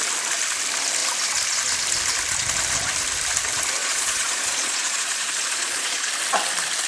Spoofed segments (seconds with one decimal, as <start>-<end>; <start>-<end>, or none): 3.8-6.1

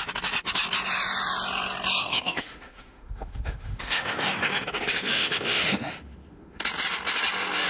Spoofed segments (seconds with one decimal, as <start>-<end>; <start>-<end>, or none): 2.0-6.6

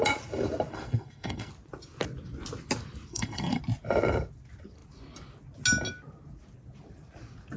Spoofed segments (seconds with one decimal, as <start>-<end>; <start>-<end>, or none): 0.7-1.5; 3.1-3.6

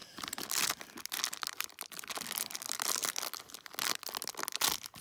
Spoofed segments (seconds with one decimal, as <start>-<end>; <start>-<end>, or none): none

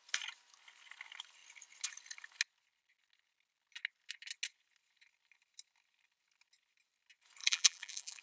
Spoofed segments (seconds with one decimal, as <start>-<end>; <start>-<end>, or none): 7.4-8.2

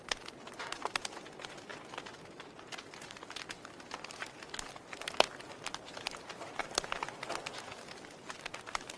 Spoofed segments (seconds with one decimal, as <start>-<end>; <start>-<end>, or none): none